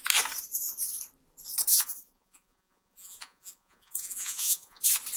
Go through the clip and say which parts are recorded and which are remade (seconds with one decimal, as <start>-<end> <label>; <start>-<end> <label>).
0.0-1.7 recorded; 1.7-4.8 remade; 4.8-5.2 recorded